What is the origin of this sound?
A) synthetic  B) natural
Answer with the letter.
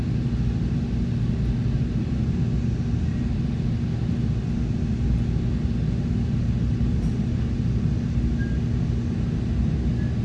B